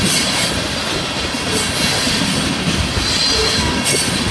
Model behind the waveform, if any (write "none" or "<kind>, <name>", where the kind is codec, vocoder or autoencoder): none